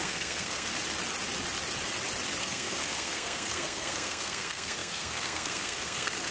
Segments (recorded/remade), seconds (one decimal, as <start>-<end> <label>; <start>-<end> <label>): 0.0-0.7 remade; 0.7-2.4 recorded; 2.4-6.3 remade